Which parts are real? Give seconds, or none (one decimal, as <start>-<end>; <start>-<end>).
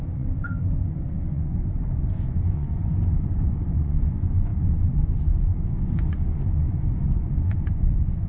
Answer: none